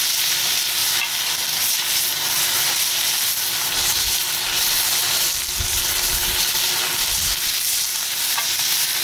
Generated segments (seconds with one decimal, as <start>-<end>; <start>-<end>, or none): none